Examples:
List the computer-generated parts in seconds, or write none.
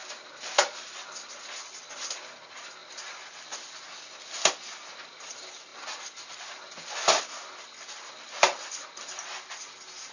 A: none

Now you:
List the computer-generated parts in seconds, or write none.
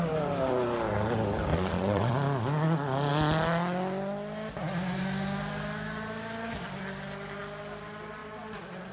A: 1.5-2.1 (vocoder, Vocos)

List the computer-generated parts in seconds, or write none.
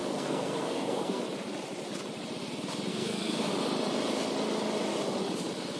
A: 0.0-1.2 (codec, SNAC); 2.9-3.5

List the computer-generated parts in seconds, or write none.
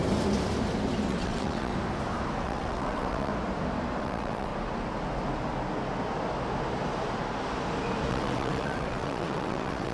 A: 1.1-1.7 (vocoder, WaveNeXt); 2.4-3.3; 4.0-4.5; 8.1-9.9